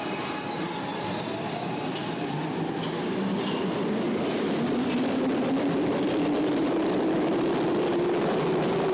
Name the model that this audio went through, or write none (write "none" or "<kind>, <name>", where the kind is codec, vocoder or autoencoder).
vocoder, BigVGAN v2